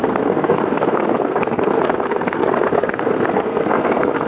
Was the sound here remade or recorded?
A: remade